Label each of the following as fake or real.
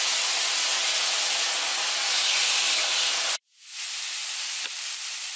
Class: real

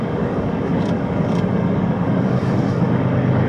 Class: fake